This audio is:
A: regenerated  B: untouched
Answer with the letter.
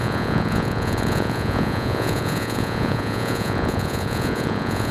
A